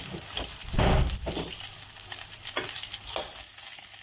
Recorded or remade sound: recorded